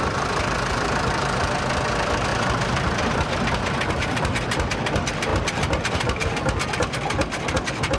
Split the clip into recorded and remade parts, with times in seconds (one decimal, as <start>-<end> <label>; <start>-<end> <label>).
0.0-8.0 remade